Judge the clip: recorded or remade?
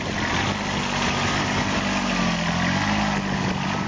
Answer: recorded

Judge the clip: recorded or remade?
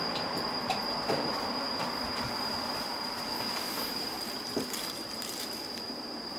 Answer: remade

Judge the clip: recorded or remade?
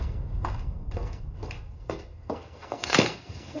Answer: remade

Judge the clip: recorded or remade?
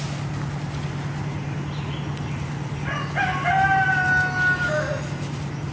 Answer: recorded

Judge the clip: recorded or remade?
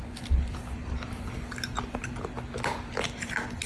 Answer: recorded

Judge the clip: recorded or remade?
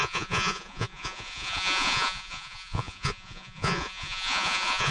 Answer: remade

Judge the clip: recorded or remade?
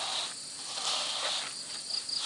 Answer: recorded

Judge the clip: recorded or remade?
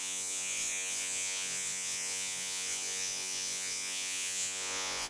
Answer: remade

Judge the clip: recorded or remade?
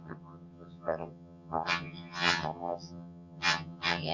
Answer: remade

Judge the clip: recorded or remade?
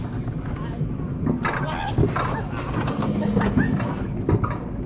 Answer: recorded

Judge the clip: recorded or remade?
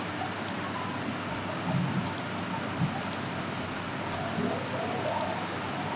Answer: recorded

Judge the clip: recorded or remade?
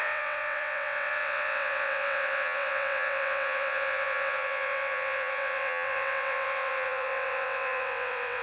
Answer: remade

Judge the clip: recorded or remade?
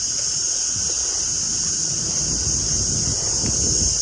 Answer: recorded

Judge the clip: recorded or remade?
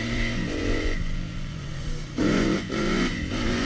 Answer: remade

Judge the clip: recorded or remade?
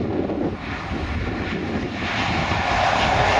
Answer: recorded